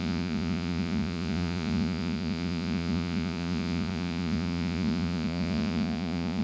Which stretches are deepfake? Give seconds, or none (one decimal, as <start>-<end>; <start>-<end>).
0.0-6.4